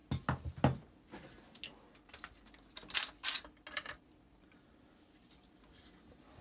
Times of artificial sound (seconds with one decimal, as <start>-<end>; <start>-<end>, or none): none